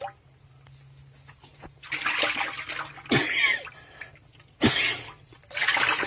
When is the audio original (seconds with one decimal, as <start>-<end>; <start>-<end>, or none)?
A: 0.0-6.1

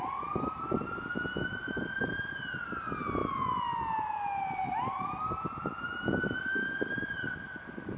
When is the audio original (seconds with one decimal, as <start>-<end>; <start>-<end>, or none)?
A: 0.0-8.0

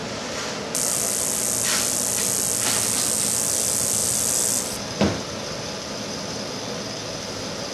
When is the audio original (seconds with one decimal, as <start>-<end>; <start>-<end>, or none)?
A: 0.6-4.0; 6.5-7.7